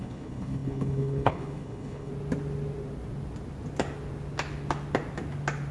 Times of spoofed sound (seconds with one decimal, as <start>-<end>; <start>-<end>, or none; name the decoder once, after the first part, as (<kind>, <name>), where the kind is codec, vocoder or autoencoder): 0.0-2.1 (codec, HILCodec)